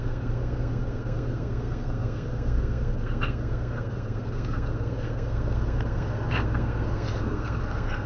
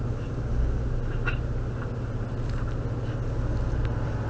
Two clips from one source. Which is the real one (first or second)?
second